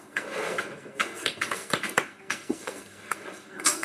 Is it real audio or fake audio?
fake